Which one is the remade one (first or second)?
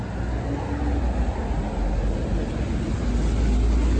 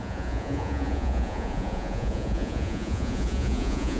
second